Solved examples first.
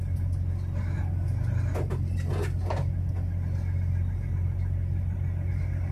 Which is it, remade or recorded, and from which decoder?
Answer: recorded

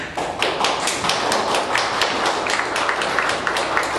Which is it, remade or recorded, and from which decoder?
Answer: recorded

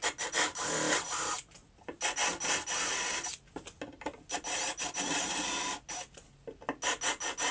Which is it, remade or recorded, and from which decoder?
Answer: recorded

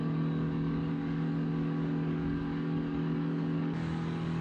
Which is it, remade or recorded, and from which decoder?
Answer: remade, codec, DAC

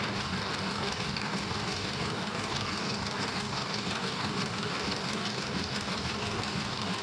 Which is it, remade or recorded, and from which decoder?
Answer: remade, codec, DAC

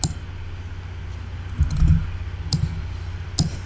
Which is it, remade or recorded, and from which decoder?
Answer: recorded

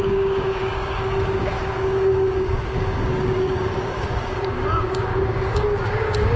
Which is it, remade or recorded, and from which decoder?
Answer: remade, codec, DAC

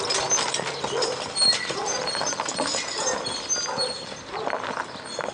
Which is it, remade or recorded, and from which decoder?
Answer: recorded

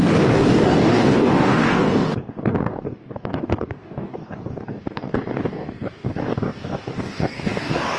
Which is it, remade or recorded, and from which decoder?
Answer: remade, codec, DAC